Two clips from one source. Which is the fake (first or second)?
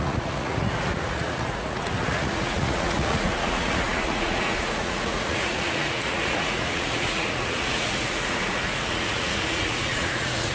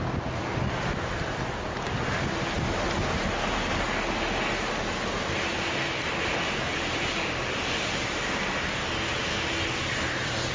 first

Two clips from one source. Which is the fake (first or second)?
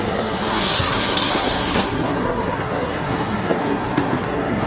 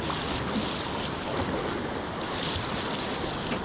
first